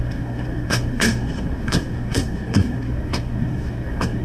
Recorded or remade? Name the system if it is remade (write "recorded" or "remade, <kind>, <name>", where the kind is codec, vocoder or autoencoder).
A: remade, codec, SNAC